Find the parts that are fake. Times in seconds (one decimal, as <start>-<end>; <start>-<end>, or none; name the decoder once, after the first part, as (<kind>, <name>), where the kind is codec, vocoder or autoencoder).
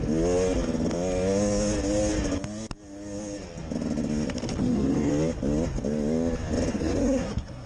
4.6-5.1 (codec, SNAC); 6.7-7.7